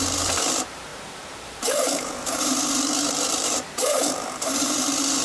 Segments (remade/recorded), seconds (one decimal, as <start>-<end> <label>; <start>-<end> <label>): 0.0-5.2 remade